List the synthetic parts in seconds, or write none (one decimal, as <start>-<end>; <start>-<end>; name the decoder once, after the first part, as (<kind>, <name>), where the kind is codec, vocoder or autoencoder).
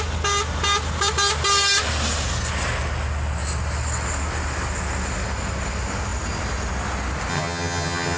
7.3-8.2 (vocoder, HiFi-GAN)